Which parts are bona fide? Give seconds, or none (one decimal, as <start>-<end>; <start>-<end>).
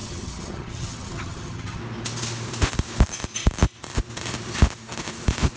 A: 1.8-5.6